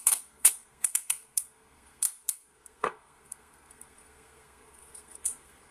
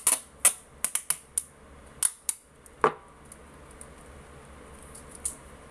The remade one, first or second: first